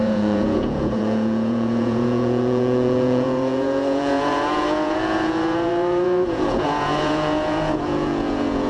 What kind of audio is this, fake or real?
fake